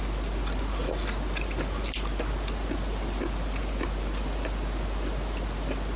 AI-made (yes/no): no